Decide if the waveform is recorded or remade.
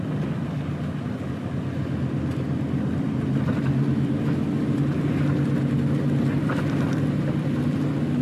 recorded